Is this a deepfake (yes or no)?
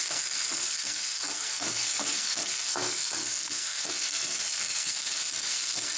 yes